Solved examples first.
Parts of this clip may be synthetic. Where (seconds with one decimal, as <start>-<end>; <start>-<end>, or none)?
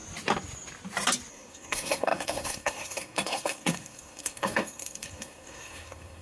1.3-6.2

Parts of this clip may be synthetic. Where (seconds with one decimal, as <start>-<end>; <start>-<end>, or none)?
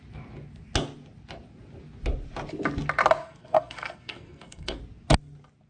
3.2-4.8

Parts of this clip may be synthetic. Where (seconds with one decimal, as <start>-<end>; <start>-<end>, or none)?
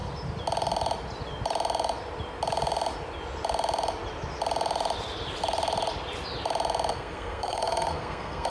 6.9-8.5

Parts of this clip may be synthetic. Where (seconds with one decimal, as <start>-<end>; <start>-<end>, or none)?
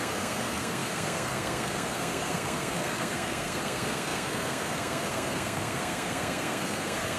0.0-7.2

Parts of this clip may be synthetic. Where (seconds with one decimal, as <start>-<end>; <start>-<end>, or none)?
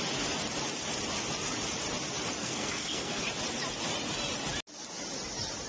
2.4-3.2